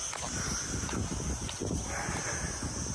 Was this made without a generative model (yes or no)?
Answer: yes